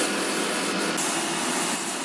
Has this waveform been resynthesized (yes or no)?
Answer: no